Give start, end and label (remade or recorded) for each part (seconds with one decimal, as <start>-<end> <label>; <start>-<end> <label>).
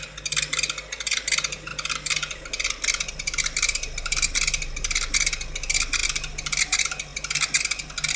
0.0-8.2 recorded